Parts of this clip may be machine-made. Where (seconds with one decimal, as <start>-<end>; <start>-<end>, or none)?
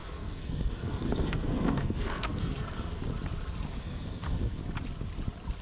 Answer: 0.0-3.0; 3.8-4.6